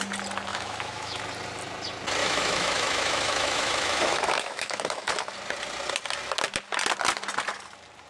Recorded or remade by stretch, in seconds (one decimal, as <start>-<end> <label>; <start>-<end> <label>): 0.0-0.5 recorded; 0.5-1.2 remade; 1.2-2.2 recorded; 2.2-5.1 remade; 5.1-8.1 recorded